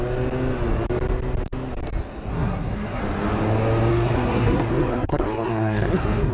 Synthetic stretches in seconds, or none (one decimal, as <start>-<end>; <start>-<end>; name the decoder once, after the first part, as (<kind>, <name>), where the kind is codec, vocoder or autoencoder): 2.3-3.0 (codec, SNAC); 3.9-6.3